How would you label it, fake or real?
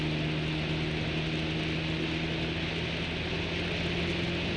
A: real